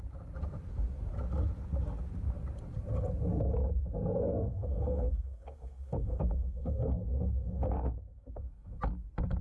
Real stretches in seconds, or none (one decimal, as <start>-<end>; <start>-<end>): 0.0-4.5; 8.8-9.4